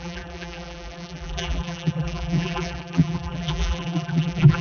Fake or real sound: fake